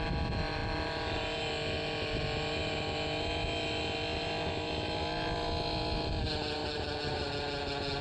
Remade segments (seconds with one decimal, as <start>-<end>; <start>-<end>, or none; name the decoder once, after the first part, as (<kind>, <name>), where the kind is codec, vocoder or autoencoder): 6.6-7.3 (vocoder, BigVGAN v2)